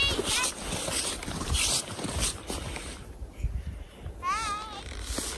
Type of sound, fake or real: real